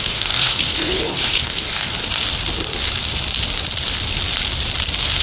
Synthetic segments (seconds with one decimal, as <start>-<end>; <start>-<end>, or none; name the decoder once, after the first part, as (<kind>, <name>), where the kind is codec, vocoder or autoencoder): 0.0-2.0 (codec, HILCodec)